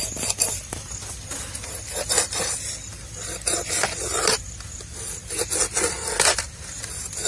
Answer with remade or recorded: recorded